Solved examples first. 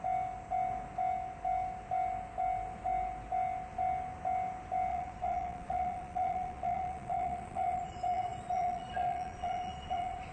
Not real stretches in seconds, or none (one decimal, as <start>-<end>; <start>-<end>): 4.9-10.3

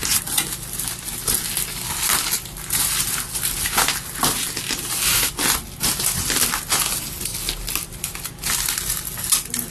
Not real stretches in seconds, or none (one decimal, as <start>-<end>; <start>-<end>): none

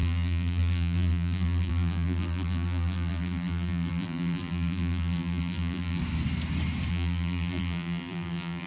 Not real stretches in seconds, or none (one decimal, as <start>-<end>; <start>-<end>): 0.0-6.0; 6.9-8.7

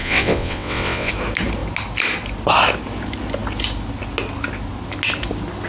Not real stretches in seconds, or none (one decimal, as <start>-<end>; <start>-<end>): 0.0-1.1

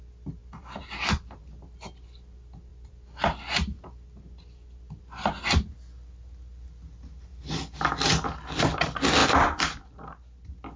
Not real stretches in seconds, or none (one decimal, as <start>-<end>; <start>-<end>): 0.4-1.4

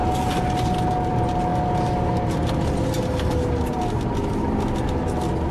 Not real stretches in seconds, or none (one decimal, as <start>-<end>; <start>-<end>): none

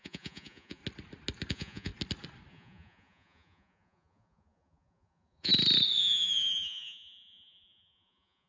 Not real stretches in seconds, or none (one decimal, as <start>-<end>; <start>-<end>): 0.0-0.8; 1.5-1.9; 2.5-5.5; 6.0-8.5

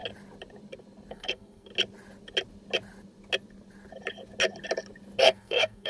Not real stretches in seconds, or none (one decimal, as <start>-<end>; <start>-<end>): 1.1-1.7; 5.2-5.9